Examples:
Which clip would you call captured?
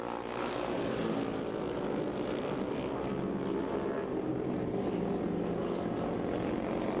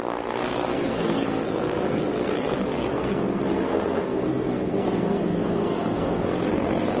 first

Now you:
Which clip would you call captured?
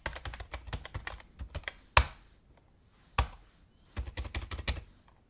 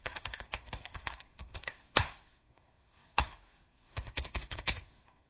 first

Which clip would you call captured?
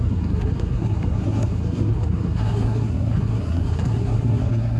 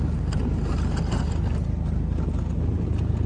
second